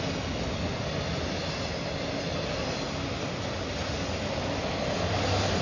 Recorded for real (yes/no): yes